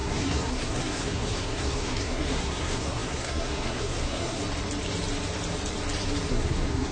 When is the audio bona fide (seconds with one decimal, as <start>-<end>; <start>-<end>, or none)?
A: 4.4-6.3